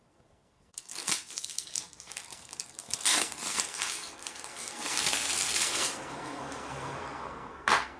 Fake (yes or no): yes